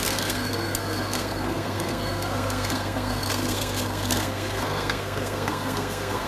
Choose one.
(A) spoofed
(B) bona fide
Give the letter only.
A